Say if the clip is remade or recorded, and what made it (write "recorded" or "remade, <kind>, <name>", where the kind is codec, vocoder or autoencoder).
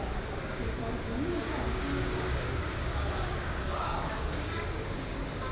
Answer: remade, codec, DAC